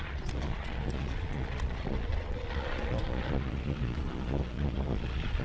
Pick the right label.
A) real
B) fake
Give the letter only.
B